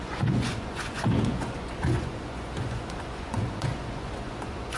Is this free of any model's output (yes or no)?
no